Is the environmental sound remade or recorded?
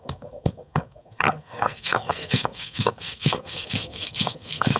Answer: remade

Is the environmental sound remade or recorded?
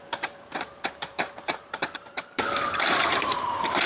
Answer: remade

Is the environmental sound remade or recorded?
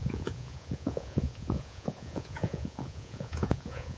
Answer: remade